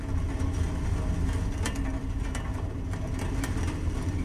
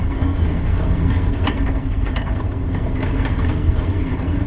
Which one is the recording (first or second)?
first